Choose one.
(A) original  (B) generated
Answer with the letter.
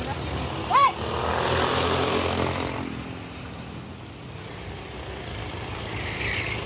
A